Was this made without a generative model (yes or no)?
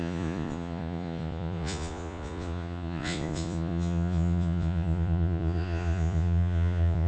no